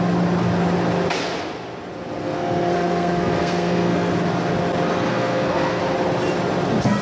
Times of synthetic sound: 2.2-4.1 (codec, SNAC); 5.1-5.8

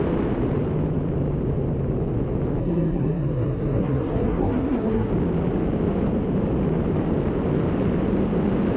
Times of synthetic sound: 2.6-5.1 (codec, SNAC)

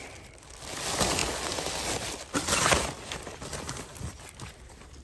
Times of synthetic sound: none

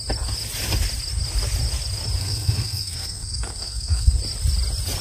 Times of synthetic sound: 2.2-4.2 (codec, SNAC)

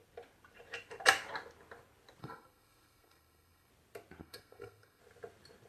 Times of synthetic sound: 2.2-3.7 (codec, SNAC); 4.2-5.0

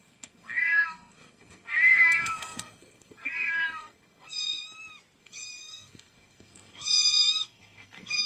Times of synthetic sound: 0.0-4.6 (codec, SNAC); 5.2-8.3